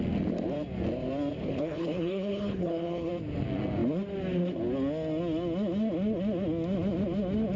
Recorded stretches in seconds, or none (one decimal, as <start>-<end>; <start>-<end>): 0.0-1.4; 3.1-7.6